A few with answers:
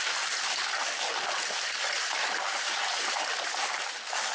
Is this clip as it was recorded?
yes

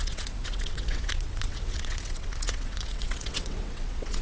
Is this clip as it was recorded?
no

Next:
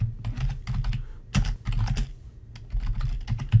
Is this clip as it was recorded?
yes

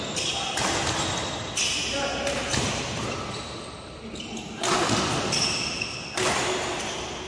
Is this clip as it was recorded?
yes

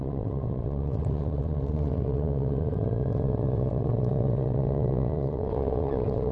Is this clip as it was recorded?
no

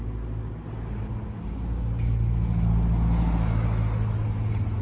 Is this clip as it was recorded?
yes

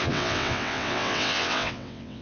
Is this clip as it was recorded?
no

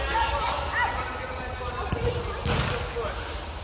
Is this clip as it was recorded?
yes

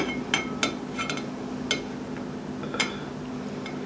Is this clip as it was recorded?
yes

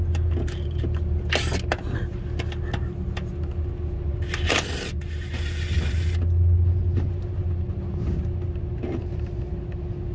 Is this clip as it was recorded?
yes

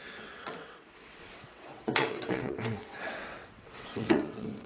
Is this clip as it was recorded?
no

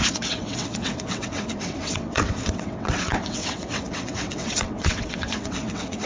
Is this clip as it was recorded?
no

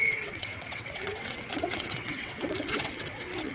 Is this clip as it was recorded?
no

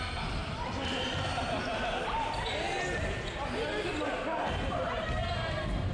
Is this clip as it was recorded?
yes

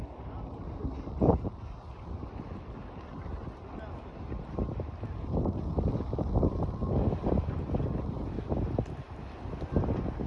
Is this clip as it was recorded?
yes